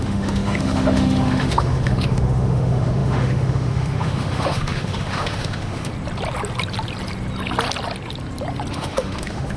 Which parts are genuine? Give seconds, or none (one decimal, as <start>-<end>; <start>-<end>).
5.9-8.7